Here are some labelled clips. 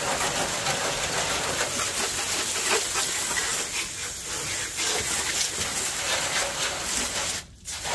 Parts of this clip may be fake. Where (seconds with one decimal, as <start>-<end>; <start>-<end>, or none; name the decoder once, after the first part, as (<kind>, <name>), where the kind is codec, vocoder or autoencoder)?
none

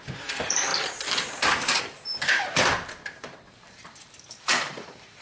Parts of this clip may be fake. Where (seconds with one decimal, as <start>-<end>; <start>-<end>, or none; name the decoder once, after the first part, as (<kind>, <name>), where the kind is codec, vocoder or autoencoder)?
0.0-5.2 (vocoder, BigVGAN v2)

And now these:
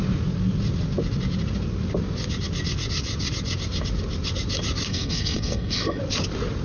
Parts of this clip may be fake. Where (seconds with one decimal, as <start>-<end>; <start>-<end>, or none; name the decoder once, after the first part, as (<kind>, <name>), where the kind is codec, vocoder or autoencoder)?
4.9-6.0 (codec, SNAC)